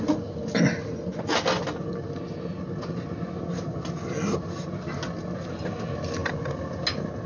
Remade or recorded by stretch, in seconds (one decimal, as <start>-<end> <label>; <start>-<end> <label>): 0.0-7.3 recorded